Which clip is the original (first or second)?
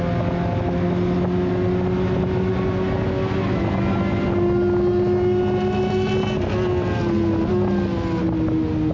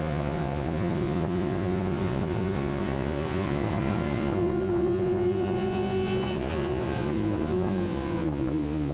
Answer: first